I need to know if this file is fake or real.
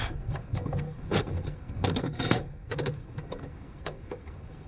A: fake